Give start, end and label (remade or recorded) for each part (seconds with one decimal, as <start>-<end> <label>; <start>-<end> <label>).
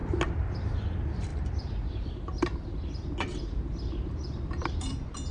0.0-5.3 recorded